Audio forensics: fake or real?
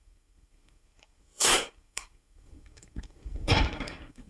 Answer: fake